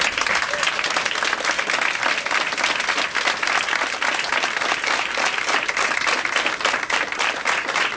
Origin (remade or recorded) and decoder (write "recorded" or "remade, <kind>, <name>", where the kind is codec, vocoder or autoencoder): recorded